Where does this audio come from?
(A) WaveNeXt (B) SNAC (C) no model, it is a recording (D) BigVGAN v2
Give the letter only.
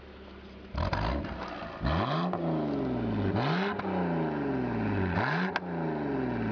C